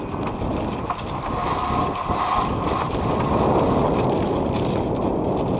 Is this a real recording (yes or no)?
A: yes